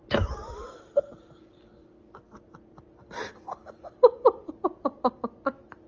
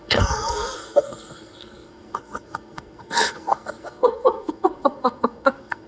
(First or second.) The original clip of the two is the first